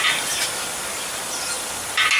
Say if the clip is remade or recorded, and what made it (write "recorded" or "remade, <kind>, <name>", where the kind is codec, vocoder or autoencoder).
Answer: recorded